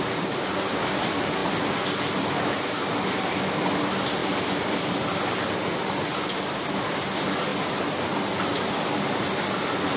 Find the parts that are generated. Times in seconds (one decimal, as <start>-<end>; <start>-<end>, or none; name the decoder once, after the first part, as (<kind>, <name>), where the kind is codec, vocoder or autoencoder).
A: none